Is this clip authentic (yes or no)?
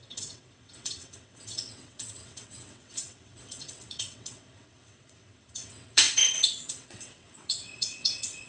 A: no